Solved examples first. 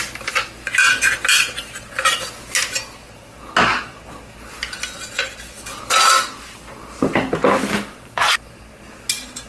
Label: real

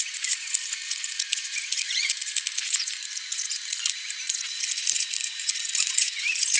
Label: fake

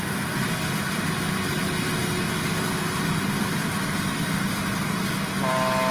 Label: real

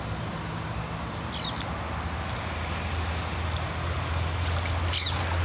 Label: real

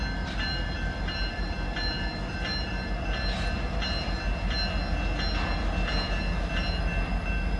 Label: real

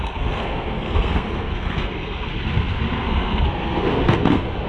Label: fake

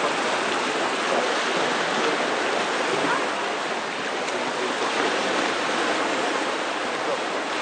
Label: real